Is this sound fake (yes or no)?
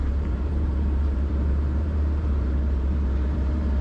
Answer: yes